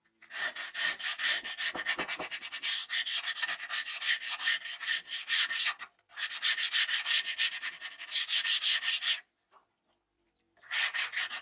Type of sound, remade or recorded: recorded